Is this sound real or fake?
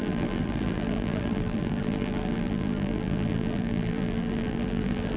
fake